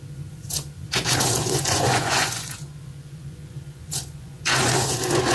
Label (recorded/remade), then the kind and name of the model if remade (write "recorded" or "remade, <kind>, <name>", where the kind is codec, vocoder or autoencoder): remade, vocoder, Vocos